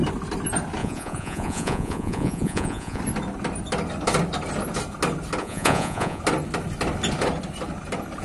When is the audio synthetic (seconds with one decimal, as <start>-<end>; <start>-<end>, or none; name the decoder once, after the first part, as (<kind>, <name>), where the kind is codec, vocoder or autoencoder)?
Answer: 0.8-3.0 (vocoder, Vocos); 5.4-6.2